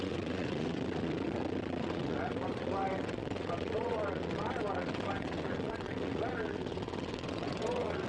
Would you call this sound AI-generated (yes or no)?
yes